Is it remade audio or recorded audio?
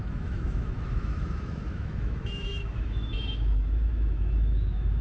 remade